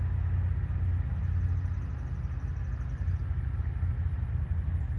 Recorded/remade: recorded